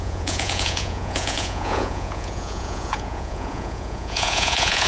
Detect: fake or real fake